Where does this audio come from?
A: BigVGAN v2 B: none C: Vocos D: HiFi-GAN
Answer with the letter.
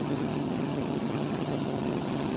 D